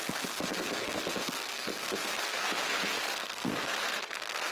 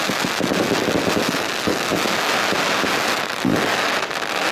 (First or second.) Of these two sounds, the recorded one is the second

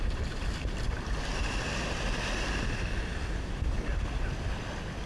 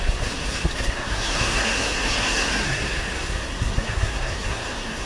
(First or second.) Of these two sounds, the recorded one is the first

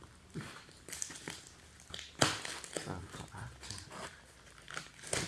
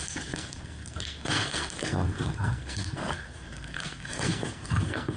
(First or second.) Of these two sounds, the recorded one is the first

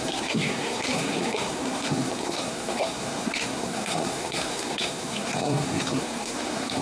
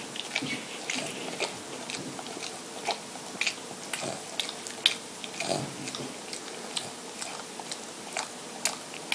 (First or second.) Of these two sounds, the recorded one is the second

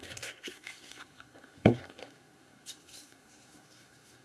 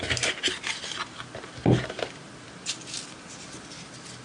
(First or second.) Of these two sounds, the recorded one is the second